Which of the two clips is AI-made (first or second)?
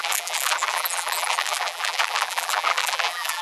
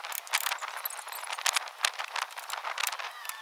first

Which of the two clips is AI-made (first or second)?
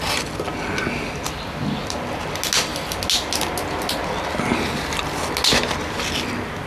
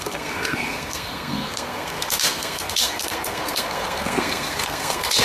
second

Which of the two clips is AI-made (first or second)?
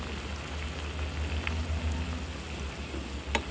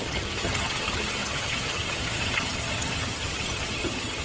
second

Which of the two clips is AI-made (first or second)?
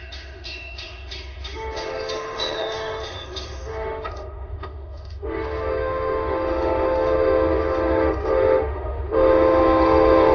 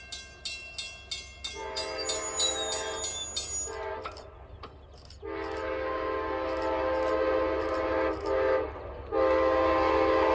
first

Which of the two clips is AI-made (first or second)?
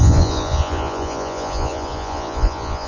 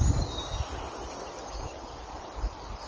first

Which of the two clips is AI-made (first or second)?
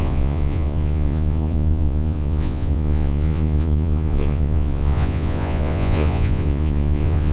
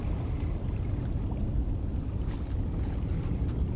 first